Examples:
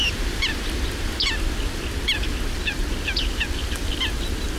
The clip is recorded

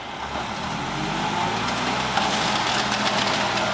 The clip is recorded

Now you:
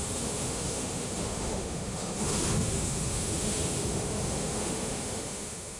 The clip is remade